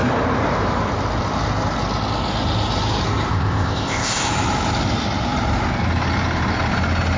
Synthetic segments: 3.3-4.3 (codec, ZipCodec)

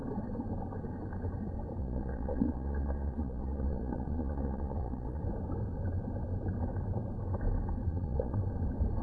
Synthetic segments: 1.8-5.2 (vocoder, Vocos); 7.9-8.4

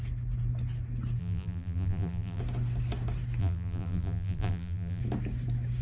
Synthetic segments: 1.2-2.4 (vocoder, BigVGAN v2); 3.4-5.0

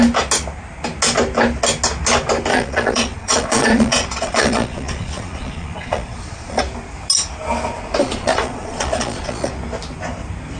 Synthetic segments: 2.5-6.6 (vocoder, Vocos); 8.0-9.5